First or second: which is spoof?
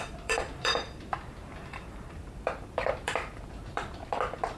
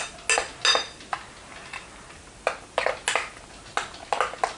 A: first